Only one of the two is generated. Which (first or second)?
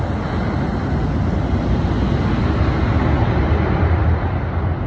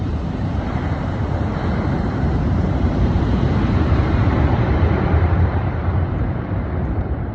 second